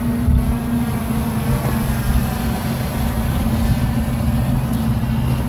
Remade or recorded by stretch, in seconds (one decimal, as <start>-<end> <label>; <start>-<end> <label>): 0.0-2.6 recorded; 2.6-3.5 remade; 3.5-5.5 recorded